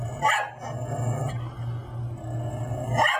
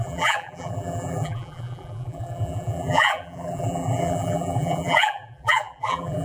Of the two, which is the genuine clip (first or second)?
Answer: first